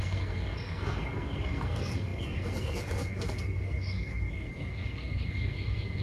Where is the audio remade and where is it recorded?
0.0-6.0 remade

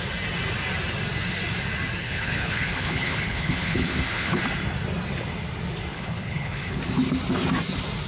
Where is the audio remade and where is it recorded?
0.0-2.0 recorded; 2.0-4.4 remade; 4.4-5.9 recorded; 5.9-6.8 remade; 6.8-8.1 recorded

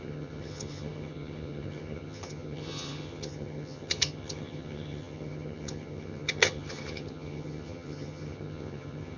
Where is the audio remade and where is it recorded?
0.0-9.2 remade

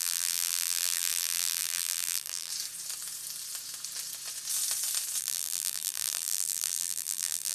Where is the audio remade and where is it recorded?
0.0-2.5 remade; 2.5-5.2 recorded; 5.2-7.5 remade

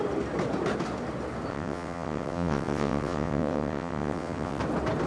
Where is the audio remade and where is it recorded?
0.0-1.5 recorded; 1.5-4.6 remade; 4.6-5.1 recorded

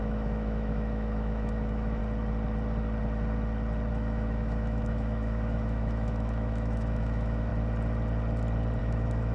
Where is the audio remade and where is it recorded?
0.0-2.0 remade; 2.0-3.9 recorded; 3.9-7.5 remade; 7.5-8.8 recorded; 8.8-9.3 remade

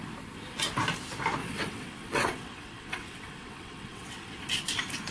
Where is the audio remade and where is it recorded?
0.0-1.4 recorded; 1.4-4.4 remade; 4.4-5.1 recorded